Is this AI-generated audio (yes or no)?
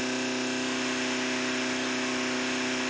no